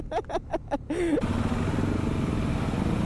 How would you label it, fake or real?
real